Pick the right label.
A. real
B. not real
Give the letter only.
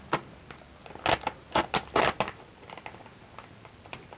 A